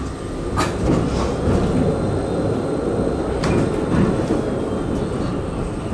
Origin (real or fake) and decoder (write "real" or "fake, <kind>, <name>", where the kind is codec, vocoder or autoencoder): real